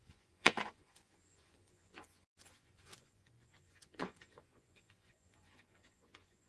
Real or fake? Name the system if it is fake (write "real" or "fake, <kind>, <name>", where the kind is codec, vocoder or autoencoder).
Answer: fake, vocoder, Vocos